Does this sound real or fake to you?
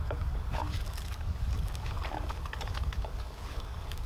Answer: fake